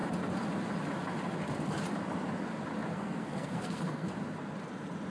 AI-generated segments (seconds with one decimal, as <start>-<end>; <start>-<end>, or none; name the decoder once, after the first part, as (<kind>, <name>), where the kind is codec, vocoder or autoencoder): 2.9-4.1 (codec, SNAC)